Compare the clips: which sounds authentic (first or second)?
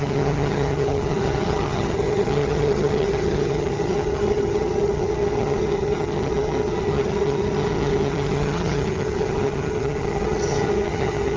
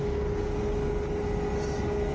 second